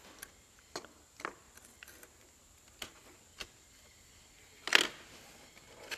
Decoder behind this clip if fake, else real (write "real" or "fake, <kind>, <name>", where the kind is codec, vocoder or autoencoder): real